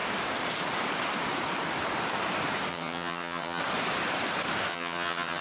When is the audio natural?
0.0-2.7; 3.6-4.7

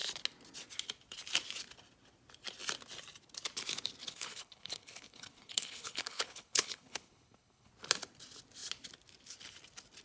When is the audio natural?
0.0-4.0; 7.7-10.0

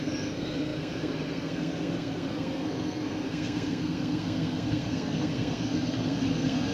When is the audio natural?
none

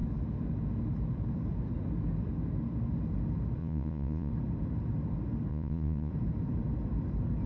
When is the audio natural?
0.0-3.6; 4.3-5.5; 6.1-7.5

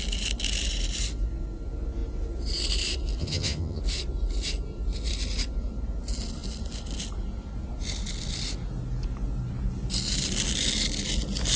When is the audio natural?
0.0-3.2; 3.8-11.6

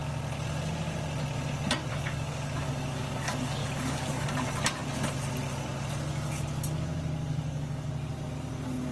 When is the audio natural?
0.0-1.9; 4.3-7.3; 7.9-8.9